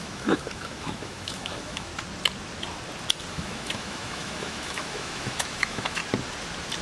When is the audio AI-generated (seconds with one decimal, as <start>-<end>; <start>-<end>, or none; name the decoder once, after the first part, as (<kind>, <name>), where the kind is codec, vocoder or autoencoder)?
0.0-1.9 (autoencoder, DAC-VAE); 3.3-6.0